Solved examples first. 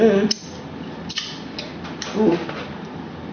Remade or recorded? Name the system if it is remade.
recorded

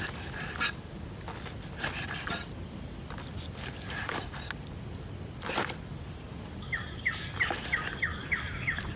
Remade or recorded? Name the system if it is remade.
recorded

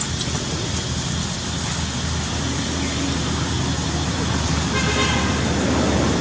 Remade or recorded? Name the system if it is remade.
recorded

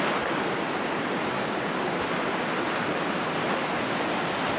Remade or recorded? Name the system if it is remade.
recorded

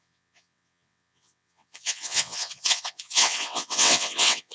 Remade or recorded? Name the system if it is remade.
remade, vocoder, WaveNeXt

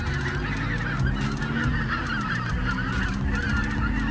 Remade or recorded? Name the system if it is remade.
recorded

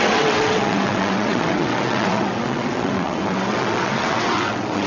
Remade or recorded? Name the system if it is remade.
remade, vocoder, WaveNeXt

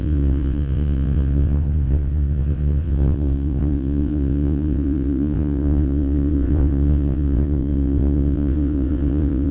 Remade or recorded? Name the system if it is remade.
remade, vocoder, WaveNeXt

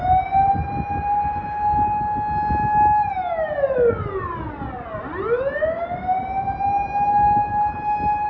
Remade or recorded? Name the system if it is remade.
recorded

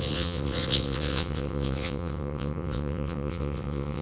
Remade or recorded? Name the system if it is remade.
remade, vocoder, WaveNeXt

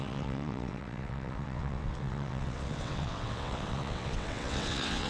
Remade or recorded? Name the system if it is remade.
remade, vocoder, WaveNeXt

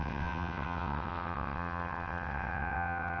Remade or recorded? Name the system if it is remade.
remade, vocoder, WaveNeXt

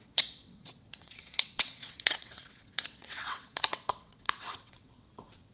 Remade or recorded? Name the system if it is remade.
remade, vocoder, WaveNeXt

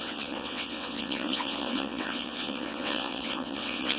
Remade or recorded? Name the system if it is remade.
remade, vocoder, WaveNeXt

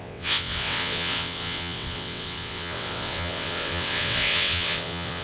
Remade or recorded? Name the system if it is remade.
remade, vocoder, WaveNeXt